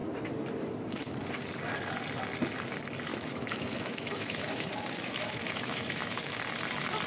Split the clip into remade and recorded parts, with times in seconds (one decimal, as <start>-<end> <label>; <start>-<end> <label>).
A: 0.0-3.1 recorded; 3.1-6.4 remade; 6.4-7.1 recorded